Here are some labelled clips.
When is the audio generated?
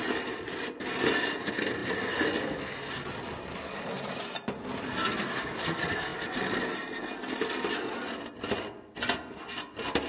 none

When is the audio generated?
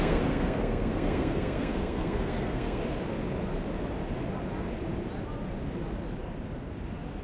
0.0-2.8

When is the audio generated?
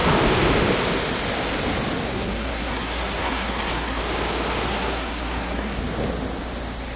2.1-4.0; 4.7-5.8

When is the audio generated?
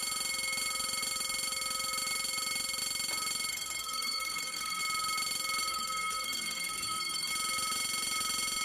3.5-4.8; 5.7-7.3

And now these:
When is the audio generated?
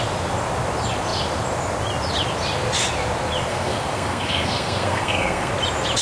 3.5-5.5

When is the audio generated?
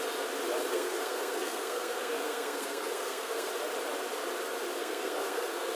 0.7-3.5; 4.8-5.7